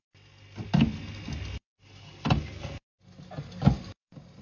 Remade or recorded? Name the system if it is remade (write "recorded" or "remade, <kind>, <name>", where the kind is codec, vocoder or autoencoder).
recorded